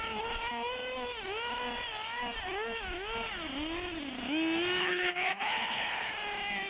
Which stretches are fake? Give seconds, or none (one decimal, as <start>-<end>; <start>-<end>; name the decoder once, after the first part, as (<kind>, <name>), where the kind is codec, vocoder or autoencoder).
4.8-6.1 (codec, HILCodec)